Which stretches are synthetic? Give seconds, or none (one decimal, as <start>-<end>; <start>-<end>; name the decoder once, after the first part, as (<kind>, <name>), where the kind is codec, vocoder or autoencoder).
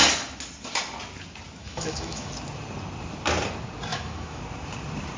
1.6-2.3 (autoencoder, DAC-VAE); 3.9-4.4